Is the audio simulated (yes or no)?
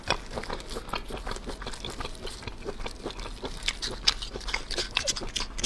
no